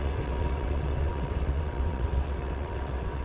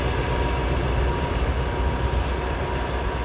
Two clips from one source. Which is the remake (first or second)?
first